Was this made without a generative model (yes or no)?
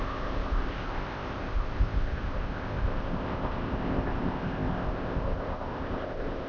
no